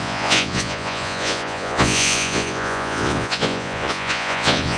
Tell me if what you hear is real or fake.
fake